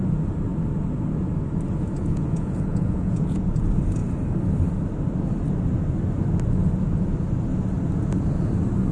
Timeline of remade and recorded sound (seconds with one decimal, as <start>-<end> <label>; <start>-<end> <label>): 0.0-2.0 recorded; 2.0-3.4 remade; 3.4-8.9 recorded